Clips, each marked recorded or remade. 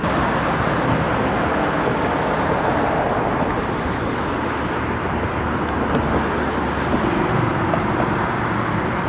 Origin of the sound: recorded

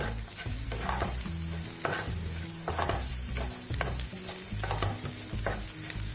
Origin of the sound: recorded